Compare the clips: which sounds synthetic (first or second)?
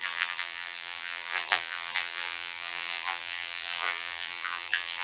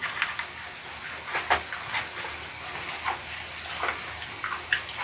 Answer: first